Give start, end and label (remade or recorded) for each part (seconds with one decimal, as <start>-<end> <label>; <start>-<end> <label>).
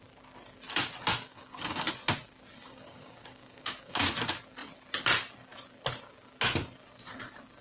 0.0-1.3 recorded; 1.3-1.9 remade; 1.9-2.6 recorded; 2.6-4.0 remade; 4.0-7.6 recorded